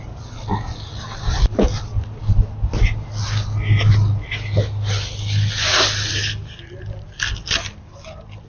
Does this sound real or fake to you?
real